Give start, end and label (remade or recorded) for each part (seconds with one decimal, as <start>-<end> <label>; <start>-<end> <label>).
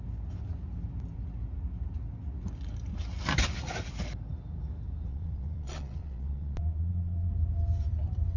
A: 0.0-5.1 recorded; 5.1-7.3 remade; 7.3-8.4 recorded